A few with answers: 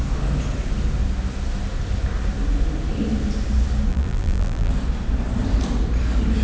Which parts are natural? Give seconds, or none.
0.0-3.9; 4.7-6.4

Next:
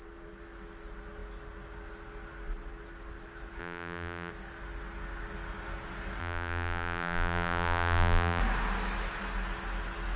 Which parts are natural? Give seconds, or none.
0.0-3.6; 4.3-6.2; 8.4-10.2